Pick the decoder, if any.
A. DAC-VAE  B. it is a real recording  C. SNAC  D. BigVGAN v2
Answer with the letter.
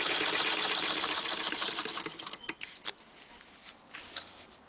B